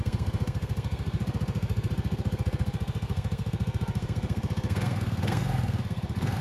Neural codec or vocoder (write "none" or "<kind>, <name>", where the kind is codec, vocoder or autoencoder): codec, SNAC